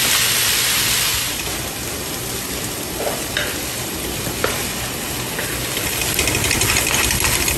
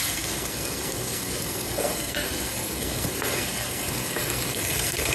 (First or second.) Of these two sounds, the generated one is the second